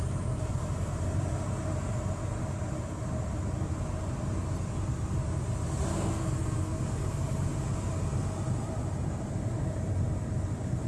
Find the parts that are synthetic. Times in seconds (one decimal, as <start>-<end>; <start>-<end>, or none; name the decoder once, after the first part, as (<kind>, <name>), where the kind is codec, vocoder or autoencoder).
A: 5.9-6.8 (codec, SNAC)